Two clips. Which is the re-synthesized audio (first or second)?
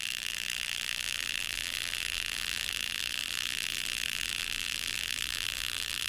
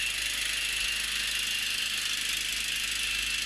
first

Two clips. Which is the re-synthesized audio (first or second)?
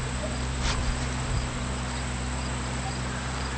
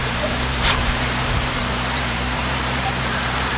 second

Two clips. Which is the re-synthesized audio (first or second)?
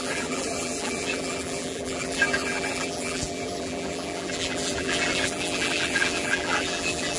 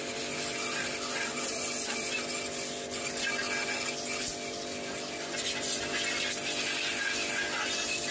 first